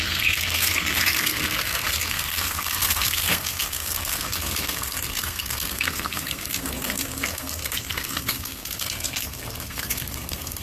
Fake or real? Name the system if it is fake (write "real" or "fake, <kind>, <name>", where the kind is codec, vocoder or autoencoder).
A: fake, codec, SNAC